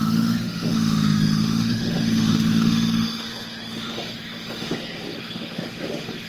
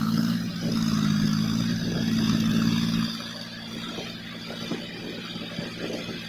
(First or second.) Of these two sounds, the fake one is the first